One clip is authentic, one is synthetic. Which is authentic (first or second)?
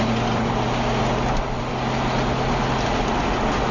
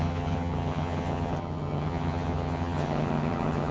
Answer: first